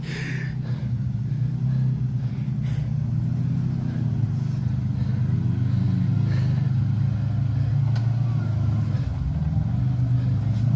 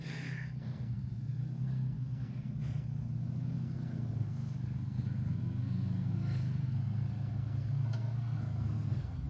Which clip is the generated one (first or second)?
second